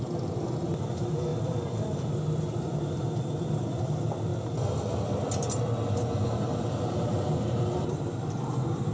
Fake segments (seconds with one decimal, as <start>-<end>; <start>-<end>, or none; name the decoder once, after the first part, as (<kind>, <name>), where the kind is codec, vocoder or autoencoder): 0.0-4.3 (vocoder, BigVGAN v2); 6.4-8.9

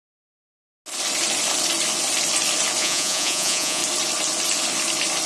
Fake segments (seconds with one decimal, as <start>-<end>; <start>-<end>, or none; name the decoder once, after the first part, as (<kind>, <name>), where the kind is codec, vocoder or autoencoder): 2.8-3.8 (vocoder, Vocos)

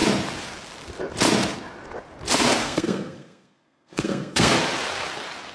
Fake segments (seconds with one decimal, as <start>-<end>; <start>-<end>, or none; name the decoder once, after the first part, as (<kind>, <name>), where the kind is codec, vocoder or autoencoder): 2.6-4.5 (codec, SNAC)

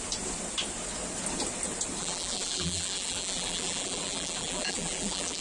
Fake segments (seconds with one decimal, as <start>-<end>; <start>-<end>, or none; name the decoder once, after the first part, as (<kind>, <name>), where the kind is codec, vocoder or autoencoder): 2.0-5.4 (vocoder, BigVGAN v2)

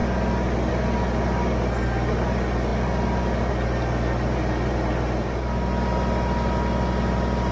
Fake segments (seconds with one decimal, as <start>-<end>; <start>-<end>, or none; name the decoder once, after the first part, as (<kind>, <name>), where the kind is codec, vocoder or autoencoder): none